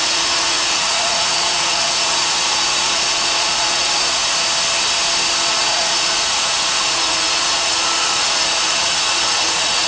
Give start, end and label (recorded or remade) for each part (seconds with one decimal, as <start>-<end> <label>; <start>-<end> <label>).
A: 0.0-4.2 remade; 4.2-5.5 recorded; 5.5-9.9 remade